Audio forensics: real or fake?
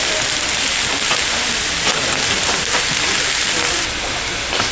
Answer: real